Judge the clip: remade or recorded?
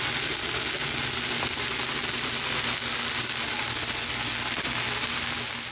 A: recorded